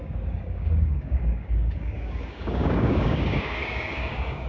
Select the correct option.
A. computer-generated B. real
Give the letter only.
A